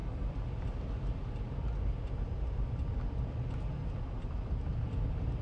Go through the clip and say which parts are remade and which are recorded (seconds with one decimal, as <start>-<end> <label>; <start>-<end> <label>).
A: 0.0-1.1 recorded; 1.1-2.3 remade; 2.3-4.7 recorded; 4.7-5.4 remade